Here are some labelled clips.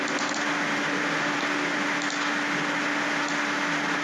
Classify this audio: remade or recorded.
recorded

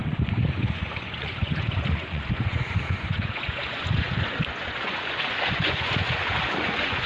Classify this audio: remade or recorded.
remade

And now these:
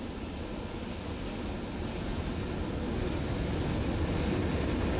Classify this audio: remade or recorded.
recorded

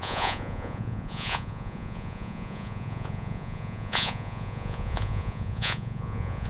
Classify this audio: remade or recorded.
remade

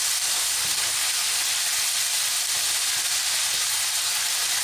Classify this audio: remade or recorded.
recorded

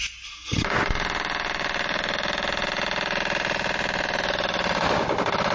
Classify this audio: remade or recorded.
recorded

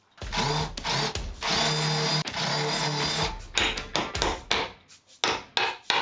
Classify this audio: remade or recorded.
recorded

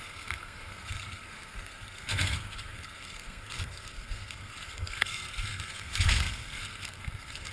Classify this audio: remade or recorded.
remade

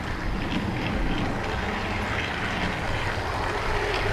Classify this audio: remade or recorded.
recorded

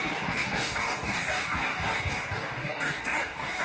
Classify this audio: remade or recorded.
remade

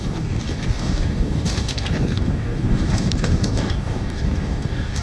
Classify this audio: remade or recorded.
remade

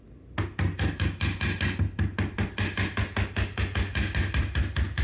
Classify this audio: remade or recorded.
recorded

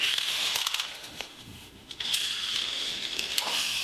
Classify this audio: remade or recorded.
remade